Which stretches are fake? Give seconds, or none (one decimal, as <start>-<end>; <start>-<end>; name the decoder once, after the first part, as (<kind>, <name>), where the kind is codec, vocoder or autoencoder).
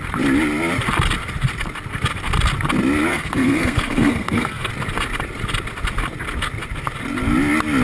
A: 3.1-4.7 (codec, SNAC)